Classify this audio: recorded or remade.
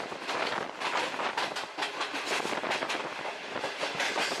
recorded